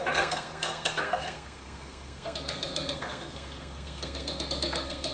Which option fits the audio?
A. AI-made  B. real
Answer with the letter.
A